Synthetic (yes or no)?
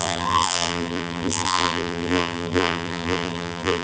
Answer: yes